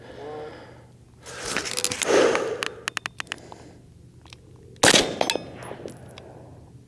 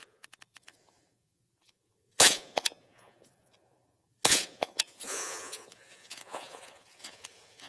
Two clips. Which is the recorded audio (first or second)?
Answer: first